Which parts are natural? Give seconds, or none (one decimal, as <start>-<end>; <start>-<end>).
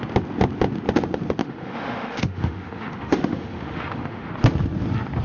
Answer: 0.0-1.4; 4.3-5.2